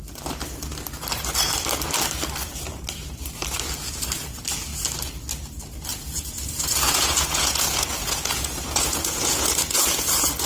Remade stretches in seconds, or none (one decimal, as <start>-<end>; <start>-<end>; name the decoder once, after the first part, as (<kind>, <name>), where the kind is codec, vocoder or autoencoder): 5.9-10.5 (vocoder, Vocos)